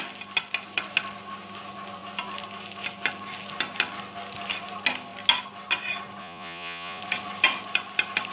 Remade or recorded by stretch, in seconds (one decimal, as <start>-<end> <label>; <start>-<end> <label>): 0.0-6.2 recorded; 6.2-7.0 remade; 7.0-8.3 recorded